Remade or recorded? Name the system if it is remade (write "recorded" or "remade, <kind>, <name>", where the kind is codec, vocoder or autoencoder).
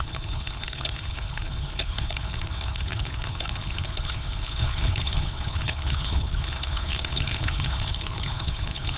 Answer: remade, codec, HILCodec